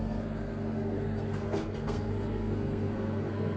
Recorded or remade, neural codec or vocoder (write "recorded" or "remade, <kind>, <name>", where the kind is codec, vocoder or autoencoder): remade, codec, SNAC